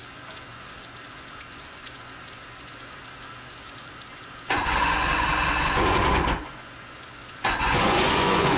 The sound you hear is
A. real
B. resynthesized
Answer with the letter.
B